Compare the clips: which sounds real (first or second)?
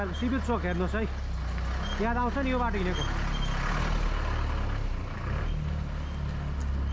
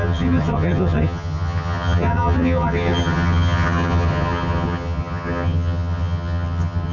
first